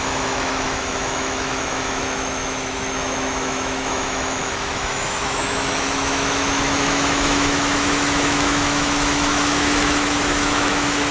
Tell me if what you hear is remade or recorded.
remade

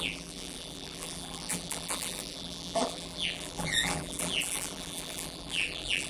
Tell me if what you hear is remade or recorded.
remade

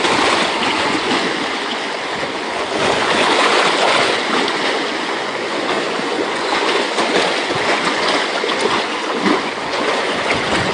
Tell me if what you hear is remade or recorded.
remade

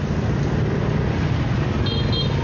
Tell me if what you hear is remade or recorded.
recorded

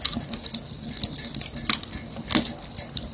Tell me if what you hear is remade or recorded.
recorded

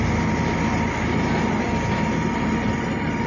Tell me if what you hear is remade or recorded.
recorded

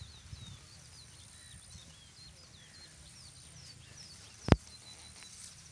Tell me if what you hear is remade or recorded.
recorded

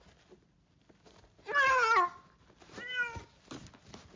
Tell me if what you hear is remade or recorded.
recorded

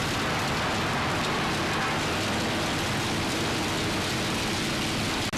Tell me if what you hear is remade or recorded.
recorded